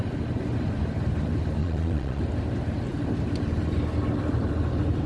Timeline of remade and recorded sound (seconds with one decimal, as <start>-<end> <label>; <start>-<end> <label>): 0.0-1.6 recorded; 1.6-2.2 remade; 2.2-5.1 recorded